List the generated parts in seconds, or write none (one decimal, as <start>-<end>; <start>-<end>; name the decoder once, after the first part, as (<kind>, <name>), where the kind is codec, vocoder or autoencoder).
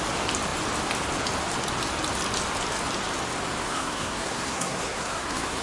3.6-5.6 (codec, SNAC)